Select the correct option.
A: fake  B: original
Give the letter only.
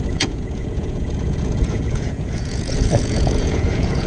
A